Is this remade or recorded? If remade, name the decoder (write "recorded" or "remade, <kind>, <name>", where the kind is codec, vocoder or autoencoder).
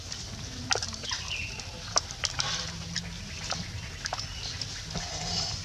recorded